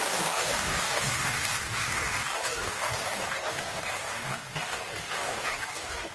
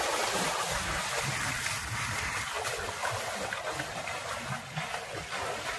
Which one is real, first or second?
second